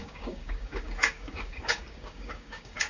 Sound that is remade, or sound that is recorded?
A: remade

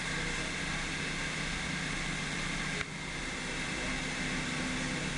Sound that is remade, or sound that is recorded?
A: recorded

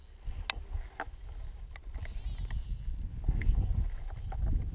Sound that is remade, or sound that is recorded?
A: recorded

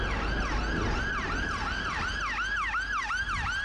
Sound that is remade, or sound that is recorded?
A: recorded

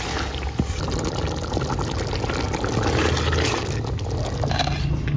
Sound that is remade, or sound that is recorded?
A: recorded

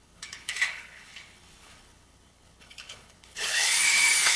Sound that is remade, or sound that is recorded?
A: remade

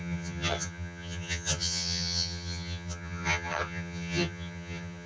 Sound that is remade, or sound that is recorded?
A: remade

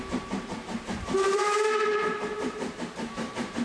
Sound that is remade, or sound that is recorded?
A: remade